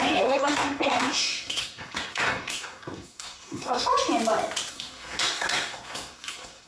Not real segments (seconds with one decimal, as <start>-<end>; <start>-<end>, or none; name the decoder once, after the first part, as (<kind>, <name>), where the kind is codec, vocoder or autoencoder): 0.0-3.9 (codec, SNAC); 4.7-6.7